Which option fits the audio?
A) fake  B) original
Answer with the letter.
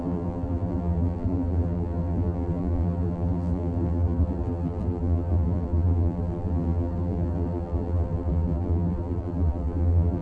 A